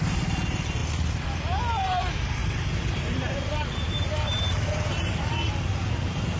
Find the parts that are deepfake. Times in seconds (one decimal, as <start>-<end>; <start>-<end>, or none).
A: 2.4-6.4